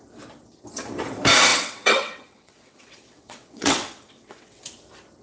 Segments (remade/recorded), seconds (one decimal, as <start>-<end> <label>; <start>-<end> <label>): 0.0-1.5 recorded; 1.5-4.6 remade; 4.6-5.2 recorded